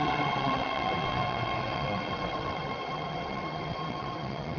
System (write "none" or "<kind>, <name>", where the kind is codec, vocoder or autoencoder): vocoder, WaveNeXt